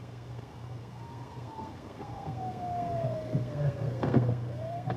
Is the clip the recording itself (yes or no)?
no